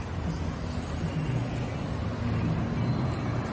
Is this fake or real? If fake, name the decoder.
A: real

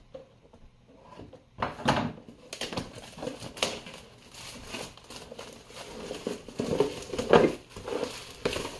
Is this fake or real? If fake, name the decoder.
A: real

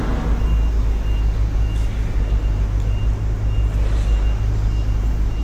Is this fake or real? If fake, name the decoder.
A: real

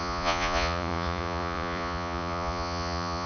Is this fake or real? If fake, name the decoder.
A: fake, vocoder, Vocos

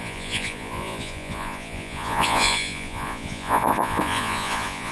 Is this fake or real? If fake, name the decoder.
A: fake, vocoder, Vocos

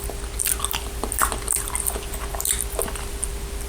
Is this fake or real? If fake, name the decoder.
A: real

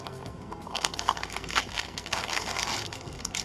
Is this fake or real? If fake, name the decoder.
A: fake, codec, SNAC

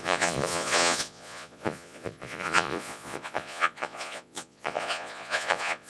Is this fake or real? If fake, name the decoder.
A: fake, vocoder, Vocos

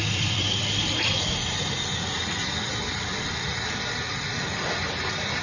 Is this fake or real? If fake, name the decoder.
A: fake, vocoder, BigVGAN v2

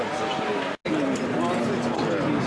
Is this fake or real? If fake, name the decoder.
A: real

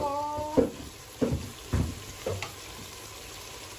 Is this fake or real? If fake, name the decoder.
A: real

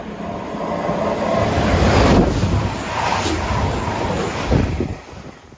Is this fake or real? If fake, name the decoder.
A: real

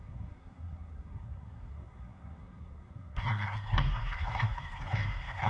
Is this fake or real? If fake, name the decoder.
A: fake, codec, SNAC